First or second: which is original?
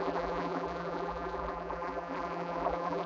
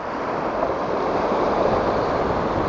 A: second